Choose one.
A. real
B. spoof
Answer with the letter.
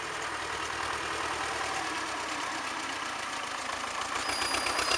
A